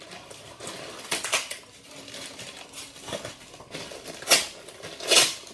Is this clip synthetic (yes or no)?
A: no